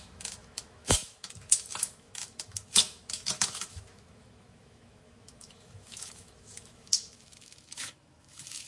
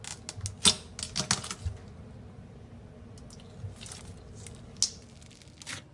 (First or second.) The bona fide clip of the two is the second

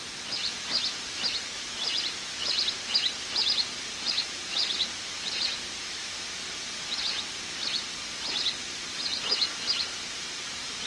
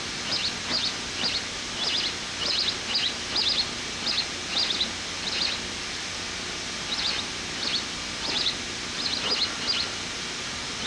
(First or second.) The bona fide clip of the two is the second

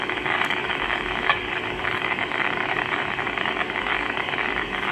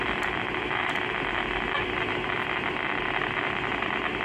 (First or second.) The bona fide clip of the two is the second